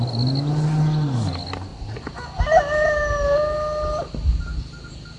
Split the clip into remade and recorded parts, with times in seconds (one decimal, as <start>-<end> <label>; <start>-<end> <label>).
0.0-5.2 recorded